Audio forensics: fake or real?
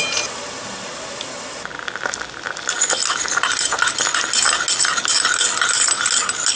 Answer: real